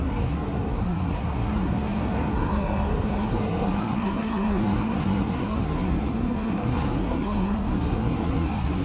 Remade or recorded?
remade